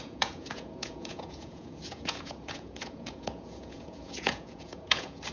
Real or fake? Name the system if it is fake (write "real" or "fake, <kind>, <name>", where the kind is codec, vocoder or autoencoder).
fake, vocoder, Vocos